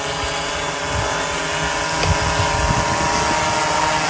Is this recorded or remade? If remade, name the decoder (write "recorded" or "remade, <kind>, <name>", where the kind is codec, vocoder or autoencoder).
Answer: recorded